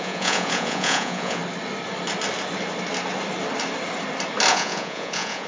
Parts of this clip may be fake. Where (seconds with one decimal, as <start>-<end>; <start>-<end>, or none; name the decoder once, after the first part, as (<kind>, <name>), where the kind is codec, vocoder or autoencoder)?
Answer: 0.0-1.4 (vocoder, Vocos); 4.5-5.5